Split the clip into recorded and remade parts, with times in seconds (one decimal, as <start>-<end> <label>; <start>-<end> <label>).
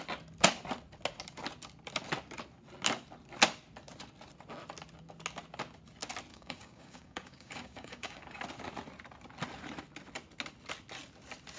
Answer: 0.0-6.3 recorded; 6.3-8.4 remade; 8.4-11.6 recorded